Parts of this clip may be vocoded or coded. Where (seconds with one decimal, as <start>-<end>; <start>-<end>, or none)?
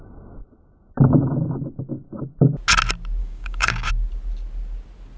3.2-3.9